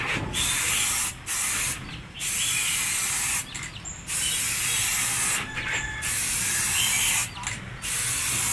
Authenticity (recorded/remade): recorded